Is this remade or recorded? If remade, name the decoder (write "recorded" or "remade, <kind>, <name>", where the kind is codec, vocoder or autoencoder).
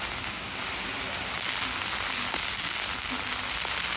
recorded